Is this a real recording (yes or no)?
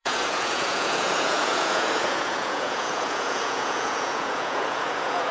no